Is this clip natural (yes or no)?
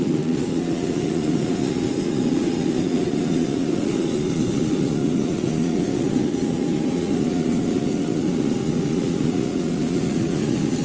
no